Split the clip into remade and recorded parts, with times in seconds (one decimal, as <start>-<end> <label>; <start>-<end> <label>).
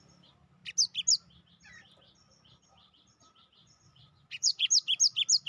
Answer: 0.0-3.6 recorded; 3.6-4.7 remade; 4.7-5.5 recorded